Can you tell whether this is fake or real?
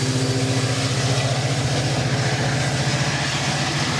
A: real